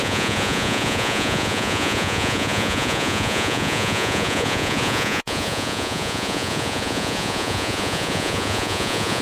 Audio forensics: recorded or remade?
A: remade